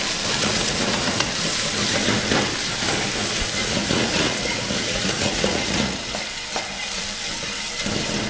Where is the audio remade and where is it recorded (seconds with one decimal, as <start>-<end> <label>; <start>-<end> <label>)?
0.0-0.4 recorded; 0.4-1.3 remade; 1.3-3.6 recorded; 3.6-6.2 remade; 6.2-8.3 recorded